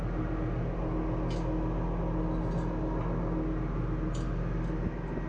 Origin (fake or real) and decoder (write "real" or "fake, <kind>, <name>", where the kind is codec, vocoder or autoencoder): real